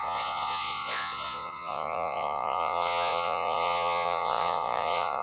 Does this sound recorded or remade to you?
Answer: remade